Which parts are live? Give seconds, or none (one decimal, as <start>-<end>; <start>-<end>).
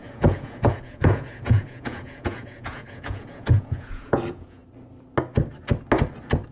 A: 4.6-6.5